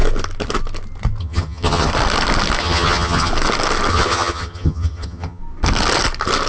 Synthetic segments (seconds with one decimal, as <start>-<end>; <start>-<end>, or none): 1.2-1.9; 2.6-3.3; 3.9-5.4